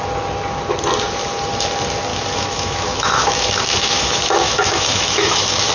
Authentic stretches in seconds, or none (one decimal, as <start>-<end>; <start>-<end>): 0.0-2.1